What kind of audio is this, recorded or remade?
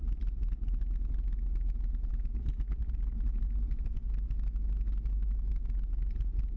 recorded